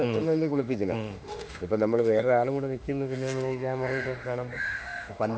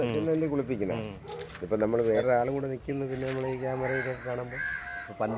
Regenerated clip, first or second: first